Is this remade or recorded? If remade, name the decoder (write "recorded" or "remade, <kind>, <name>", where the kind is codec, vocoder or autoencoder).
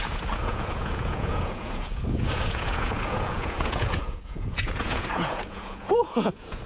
remade, vocoder, Vocos